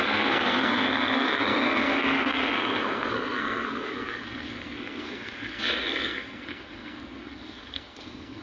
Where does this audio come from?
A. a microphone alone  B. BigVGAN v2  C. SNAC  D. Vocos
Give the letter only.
C